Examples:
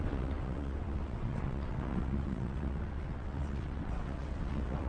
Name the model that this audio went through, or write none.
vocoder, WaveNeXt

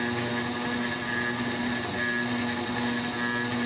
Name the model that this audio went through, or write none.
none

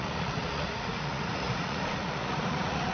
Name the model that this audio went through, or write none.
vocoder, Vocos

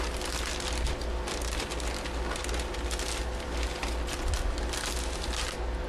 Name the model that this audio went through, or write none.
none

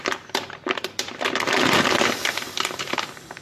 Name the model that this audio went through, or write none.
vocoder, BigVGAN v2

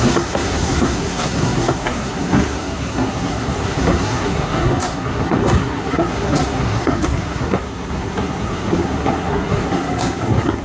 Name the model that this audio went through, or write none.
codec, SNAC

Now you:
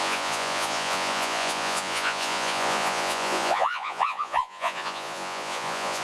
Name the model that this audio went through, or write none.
vocoder, Vocos